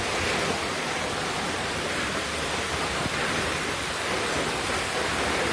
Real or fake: real